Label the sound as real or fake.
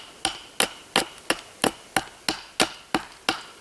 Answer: real